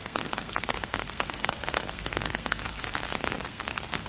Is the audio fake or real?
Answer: fake